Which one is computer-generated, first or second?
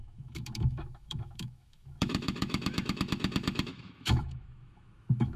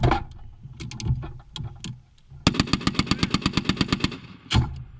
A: first